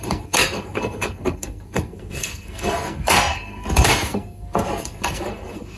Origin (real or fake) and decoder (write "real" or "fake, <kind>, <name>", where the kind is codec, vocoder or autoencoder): fake, codec, SNAC